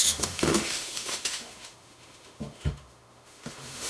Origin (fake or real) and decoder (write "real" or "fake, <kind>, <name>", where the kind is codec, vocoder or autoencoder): fake, autoencoder, DAC-VAE